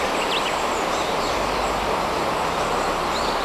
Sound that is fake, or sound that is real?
real